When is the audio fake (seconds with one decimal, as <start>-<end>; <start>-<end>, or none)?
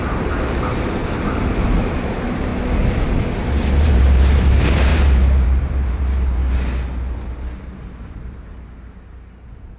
0.0-1.0; 1.8-2.5; 3.7-6.4; 7.4-9.8